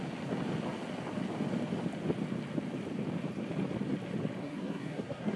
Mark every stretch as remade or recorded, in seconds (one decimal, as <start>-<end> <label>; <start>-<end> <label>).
0.0-4.4 recorded; 4.4-5.4 remade